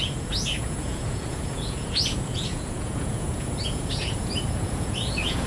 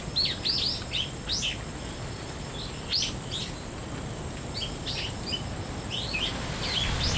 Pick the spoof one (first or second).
first